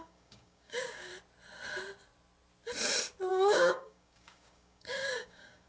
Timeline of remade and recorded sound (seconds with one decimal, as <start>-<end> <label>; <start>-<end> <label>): 0.0-1.1 remade; 1.1-3.3 recorded; 3.3-5.7 remade